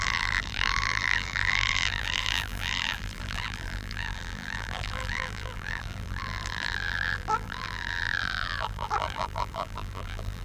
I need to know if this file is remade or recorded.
remade